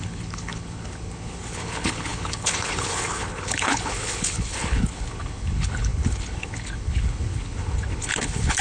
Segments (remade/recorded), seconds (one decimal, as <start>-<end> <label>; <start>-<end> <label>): 0.0-8.6 remade